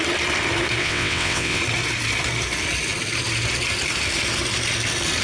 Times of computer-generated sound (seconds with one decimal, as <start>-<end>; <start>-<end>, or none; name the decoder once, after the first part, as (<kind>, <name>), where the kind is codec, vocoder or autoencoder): 0.8-1.6 (vocoder, WaveNeXt)